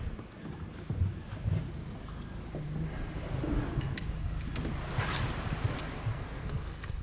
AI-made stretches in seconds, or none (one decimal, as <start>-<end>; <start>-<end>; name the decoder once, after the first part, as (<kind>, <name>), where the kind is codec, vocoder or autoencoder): 6.1-7.0 (codec, SNAC)